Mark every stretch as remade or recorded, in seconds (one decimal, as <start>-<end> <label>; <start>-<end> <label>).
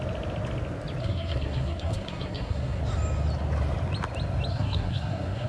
0.0-1.0 recorded; 1.0-2.8 remade; 2.8-4.5 recorded; 4.5-5.5 remade